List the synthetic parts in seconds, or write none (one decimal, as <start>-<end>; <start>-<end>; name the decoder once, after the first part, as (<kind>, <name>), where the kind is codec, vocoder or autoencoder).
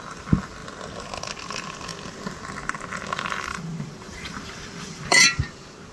3.5-5.4 (vocoder, BigVGAN v2)